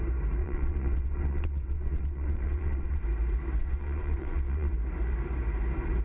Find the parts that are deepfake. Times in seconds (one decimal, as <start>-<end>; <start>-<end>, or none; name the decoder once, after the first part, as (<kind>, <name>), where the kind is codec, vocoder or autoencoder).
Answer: 0.4-3.0 (vocoder, WaveNeXt); 3.6-4.7